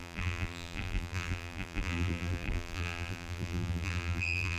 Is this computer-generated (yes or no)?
yes